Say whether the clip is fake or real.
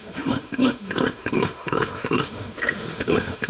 fake